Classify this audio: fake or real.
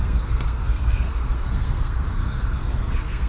fake